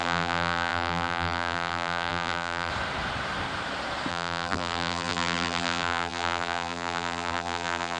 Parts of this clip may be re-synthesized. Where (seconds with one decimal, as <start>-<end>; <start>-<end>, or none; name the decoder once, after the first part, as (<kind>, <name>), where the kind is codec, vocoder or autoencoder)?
0.0-2.7 (vocoder, BigVGAN v2); 4.1-8.0